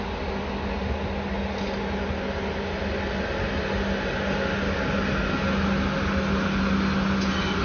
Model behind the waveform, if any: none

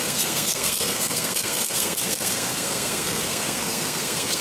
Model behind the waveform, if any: codec, SNAC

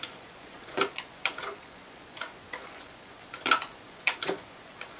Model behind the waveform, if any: vocoder, Vocos